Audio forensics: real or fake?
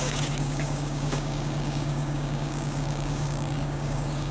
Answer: fake